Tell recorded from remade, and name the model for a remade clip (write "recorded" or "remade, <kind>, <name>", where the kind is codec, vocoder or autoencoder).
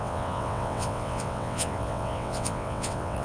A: remade, vocoder, WaveNeXt